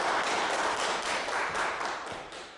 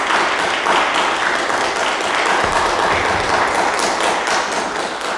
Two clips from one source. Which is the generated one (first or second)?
first